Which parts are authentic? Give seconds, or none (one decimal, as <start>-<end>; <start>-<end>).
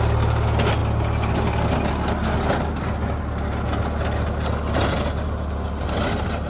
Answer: 0.0-6.5